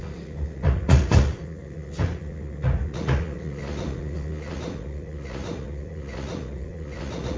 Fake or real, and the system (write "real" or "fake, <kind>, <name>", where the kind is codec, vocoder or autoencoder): fake, vocoder, Vocos